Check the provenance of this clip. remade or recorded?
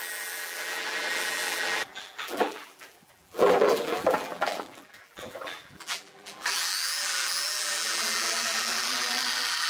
remade